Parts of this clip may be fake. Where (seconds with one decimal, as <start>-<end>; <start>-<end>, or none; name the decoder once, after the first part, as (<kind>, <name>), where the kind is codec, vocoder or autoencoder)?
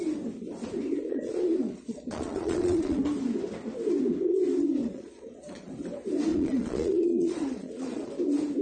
1.0-3.0 (vocoder, Vocos); 4.8-5.7; 6.3-8.1